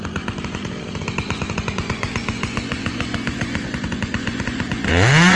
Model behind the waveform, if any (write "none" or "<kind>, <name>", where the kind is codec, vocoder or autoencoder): vocoder, Vocos